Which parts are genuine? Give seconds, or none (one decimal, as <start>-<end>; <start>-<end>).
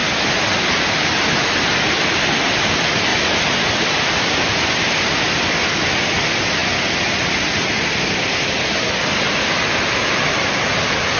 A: 0.0-11.2